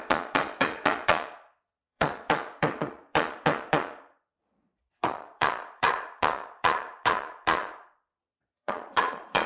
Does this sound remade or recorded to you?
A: remade